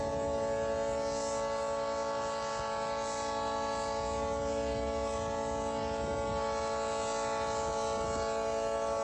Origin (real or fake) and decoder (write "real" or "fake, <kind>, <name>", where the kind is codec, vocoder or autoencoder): real